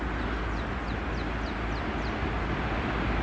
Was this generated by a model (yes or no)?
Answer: no